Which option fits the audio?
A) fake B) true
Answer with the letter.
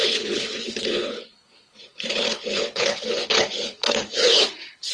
A